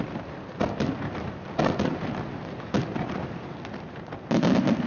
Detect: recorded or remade recorded